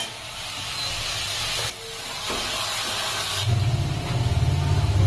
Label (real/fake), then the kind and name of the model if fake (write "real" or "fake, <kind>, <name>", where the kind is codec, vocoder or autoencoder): real